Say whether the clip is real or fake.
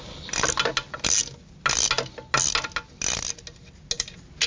real